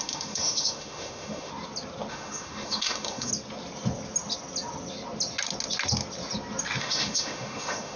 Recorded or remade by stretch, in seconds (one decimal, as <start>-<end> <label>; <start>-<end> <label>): 0.0-1.5 remade; 1.5-2.1 recorded; 2.1-3.3 remade; 3.3-6.8 recorded; 6.8-8.0 remade